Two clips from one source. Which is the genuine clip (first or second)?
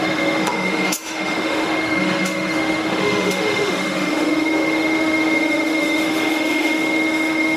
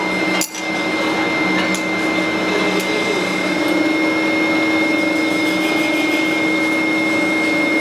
second